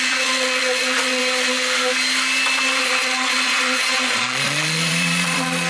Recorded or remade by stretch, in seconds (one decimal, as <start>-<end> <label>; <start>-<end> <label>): 0.0-1.2 remade; 1.2-2.8 recorded; 2.8-5.7 remade